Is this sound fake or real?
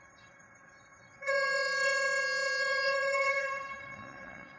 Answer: fake